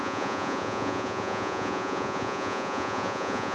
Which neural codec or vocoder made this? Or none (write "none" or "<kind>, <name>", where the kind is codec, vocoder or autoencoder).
vocoder, Vocos